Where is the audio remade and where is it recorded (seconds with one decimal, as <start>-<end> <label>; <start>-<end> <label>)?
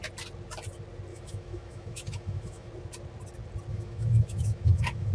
0.0-1.1 recorded; 1.1-2.7 remade; 2.7-3.7 recorded; 3.7-5.1 remade